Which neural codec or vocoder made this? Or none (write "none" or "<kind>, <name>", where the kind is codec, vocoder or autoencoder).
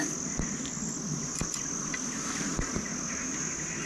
none